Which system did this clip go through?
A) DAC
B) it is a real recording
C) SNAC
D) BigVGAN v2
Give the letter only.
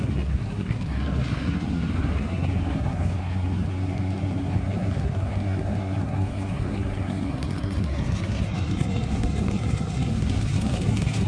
C